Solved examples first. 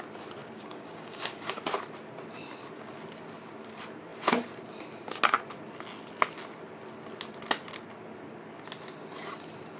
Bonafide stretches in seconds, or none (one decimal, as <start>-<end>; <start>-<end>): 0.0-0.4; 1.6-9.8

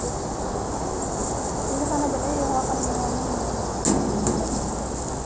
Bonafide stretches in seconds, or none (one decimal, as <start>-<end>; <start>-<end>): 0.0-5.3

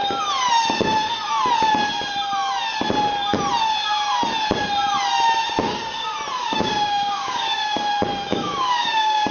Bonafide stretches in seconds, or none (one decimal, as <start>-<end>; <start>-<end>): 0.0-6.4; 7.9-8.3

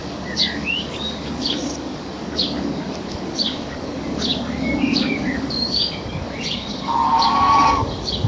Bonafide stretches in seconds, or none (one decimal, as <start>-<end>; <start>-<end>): none

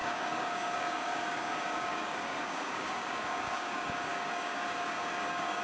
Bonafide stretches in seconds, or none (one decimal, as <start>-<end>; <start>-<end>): none

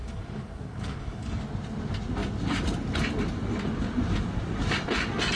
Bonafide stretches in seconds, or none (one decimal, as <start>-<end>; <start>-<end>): 1.4-5.4